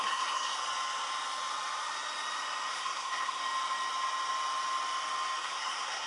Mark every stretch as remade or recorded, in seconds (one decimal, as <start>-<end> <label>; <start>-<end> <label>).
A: 0.0-0.6 remade; 0.6-2.7 recorded; 2.7-3.4 remade; 3.4-5.4 recorded; 5.4-6.1 remade